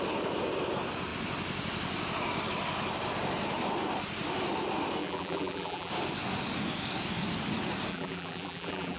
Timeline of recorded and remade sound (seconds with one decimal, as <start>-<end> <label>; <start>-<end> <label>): 0.0-5.0 recorded; 5.0-5.9 remade; 5.9-7.9 recorded; 7.9-9.0 remade